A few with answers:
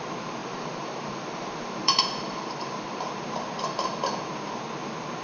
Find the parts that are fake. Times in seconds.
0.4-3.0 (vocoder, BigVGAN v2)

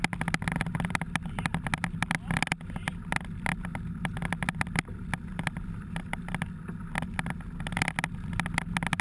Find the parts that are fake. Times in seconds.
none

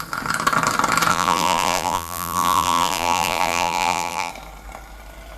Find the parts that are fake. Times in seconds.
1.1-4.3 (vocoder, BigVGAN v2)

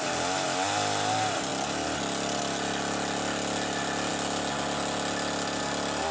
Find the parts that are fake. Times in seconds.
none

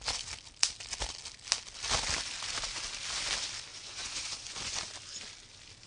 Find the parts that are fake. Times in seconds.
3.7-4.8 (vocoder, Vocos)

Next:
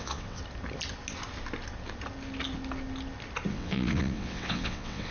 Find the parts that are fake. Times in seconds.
0.0-0.4 (vocoder, WaveNeXt); 3.5-5.1

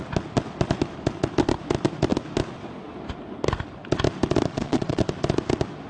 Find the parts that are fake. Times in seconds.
4.5-5.0 (vocoder, Vocos)

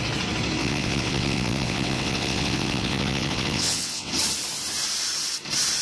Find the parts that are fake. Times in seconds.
0.6-4.1 (vocoder, WaveNeXt)